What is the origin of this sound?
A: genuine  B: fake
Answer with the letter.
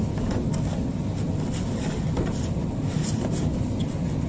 A